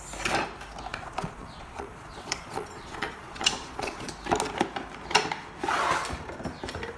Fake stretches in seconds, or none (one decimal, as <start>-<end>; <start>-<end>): 0.9-4.1